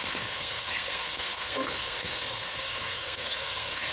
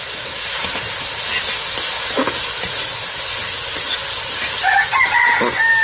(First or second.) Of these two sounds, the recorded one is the second